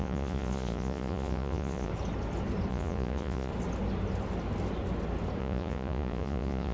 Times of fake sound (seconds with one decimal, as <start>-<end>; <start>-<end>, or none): 0.0-1.9; 2.7-3.5; 5.4-6.7